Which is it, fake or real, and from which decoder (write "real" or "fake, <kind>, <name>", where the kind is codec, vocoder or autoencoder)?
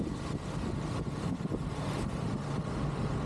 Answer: real